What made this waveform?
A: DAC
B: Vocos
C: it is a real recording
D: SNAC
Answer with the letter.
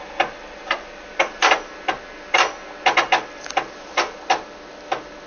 C